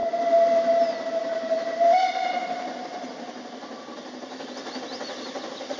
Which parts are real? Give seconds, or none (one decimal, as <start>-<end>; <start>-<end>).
0.0-5.8